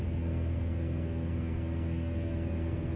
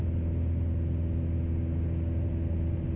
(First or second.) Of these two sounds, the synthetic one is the first